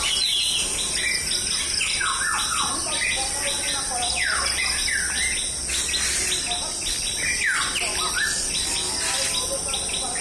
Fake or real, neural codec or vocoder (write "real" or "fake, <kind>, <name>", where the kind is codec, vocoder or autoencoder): real